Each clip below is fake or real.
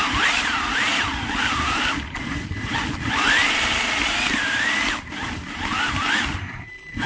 real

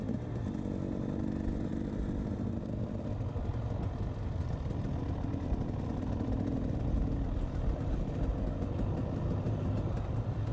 real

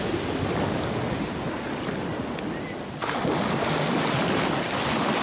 real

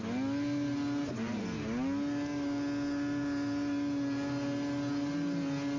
real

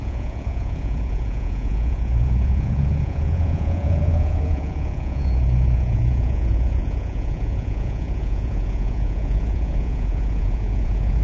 fake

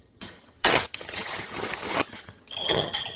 fake